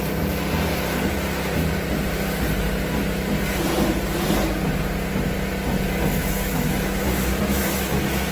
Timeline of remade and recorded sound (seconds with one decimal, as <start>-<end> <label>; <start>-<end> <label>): 0.0-6.2 recorded; 6.2-8.3 remade